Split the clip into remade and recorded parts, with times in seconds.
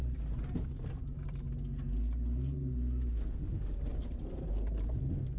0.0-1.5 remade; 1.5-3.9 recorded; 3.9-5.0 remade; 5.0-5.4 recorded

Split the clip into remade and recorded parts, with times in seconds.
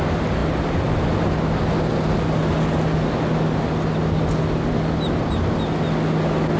0.0-6.6 recorded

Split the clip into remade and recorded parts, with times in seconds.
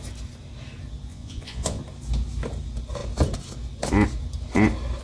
0.0-1.1 recorded; 1.1-1.8 remade; 1.8-5.0 recorded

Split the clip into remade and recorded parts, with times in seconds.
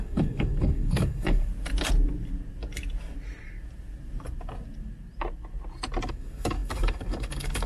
0.0-1.5 remade; 1.5-6.1 recorded; 6.1-7.7 remade